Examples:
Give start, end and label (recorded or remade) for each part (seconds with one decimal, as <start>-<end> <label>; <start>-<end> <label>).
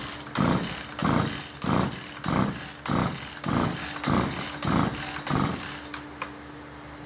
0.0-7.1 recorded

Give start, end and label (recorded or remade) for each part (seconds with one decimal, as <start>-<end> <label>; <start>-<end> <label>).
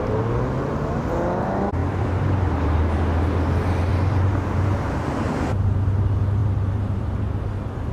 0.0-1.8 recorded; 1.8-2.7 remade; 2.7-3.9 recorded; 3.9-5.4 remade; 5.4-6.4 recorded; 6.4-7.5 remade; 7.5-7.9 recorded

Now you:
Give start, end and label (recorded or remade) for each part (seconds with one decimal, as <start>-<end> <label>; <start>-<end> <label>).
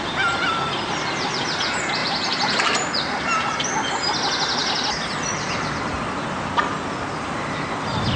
0.0-2.0 recorded; 2.0-2.9 remade; 2.9-8.2 recorded